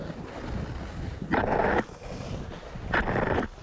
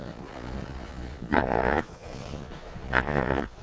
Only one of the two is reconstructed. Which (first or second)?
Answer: second